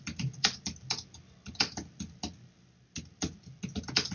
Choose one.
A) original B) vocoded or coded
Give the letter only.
A